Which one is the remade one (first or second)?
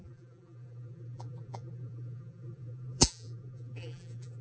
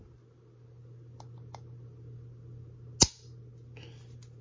first